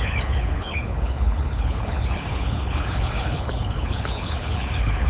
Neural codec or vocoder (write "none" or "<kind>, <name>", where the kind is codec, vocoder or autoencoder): codec, HILCodec